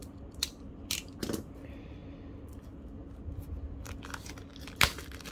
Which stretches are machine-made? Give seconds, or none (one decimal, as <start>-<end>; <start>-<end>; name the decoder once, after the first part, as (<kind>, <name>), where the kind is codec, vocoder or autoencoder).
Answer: 1.2-2.0 (vocoder, BigVGAN v2)